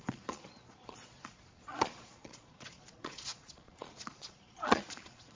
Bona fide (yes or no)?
no